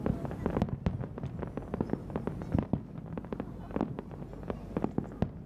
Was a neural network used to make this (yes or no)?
no